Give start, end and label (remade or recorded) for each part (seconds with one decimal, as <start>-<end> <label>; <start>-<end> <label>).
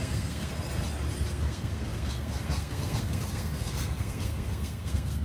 0.0-0.5 remade; 0.5-1.3 recorded; 1.3-5.2 remade